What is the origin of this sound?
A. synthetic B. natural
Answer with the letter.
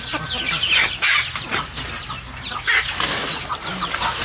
B